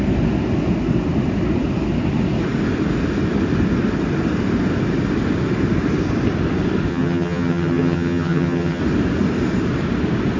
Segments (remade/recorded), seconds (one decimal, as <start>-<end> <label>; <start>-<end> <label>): 0.0-6.9 recorded; 6.9-8.8 remade; 8.8-10.4 recorded